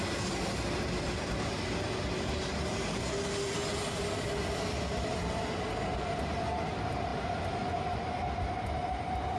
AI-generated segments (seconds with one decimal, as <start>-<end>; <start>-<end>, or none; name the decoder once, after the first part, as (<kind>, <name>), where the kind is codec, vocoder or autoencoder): none